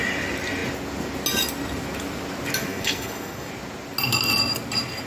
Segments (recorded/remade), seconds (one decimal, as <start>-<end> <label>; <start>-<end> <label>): 0.0-2.6 recorded; 2.6-3.5 remade; 3.5-5.1 recorded